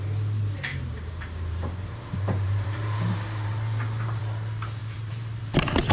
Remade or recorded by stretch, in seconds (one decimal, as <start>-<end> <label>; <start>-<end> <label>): 0.0-0.7 recorded; 0.7-4.2 remade; 4.2-4.8 recorded; 4.8-5.4 remade; 5.4-5.9 recorded